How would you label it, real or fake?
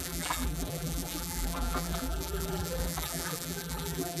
fake